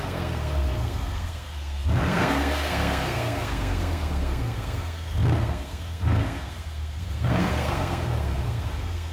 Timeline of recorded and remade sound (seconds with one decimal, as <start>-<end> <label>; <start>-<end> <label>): 0.0-9.1 remade